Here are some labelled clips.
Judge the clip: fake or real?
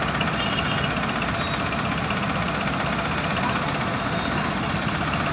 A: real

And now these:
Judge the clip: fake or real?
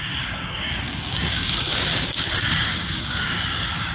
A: fake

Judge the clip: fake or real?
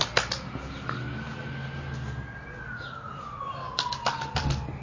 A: real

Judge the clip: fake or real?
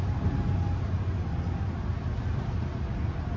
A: real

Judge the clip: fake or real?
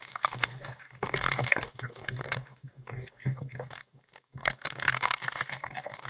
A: fake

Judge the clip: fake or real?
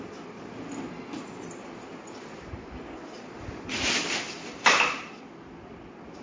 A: real